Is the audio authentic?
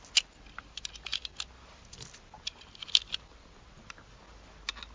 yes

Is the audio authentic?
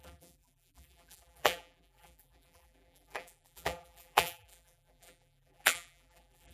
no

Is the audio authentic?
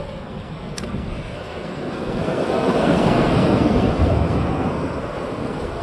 no